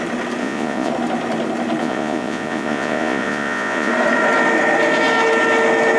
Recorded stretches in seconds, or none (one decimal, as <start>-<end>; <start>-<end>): 0.0-0.4; 0.9-1.8; 3.9-6.0